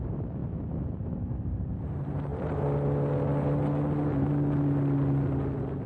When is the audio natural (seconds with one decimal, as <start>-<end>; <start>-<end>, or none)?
0.4-1.0; 2.3-5.9